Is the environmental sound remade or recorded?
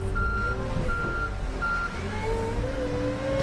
recorded